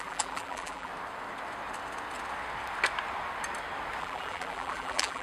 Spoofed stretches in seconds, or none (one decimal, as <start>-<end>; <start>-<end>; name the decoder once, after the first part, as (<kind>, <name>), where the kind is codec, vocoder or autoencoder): 0.0-0.9 (vocoder, BigVGAN v2); 4.0-5.2